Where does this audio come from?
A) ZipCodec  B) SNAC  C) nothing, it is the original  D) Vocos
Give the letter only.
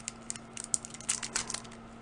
C